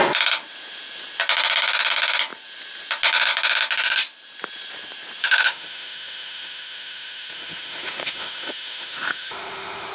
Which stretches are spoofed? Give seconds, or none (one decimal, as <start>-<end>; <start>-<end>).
5.2-9.9